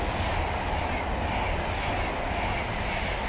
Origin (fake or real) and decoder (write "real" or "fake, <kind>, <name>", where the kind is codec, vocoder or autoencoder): real